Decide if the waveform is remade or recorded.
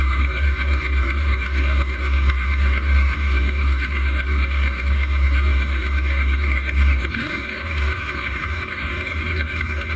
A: remade